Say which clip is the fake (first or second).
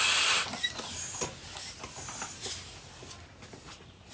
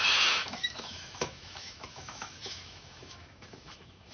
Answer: second